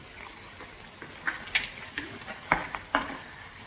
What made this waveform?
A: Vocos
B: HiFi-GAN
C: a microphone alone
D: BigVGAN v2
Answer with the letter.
C